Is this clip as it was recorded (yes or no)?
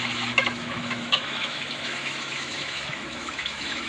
no